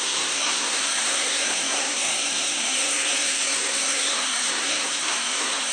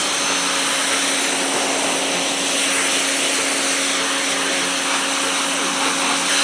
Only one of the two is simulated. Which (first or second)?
first